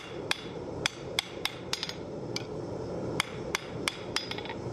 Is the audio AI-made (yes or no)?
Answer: yes